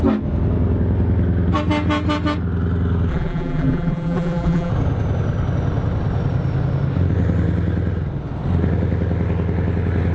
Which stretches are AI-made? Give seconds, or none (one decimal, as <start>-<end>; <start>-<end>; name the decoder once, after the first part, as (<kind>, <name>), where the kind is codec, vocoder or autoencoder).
3.1-4.7 (vocoder, BigVGAN v2)